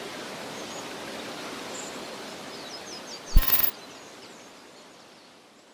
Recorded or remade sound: recorded